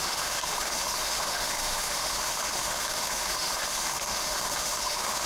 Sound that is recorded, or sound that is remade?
remade